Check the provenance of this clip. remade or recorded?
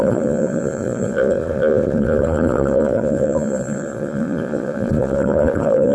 remade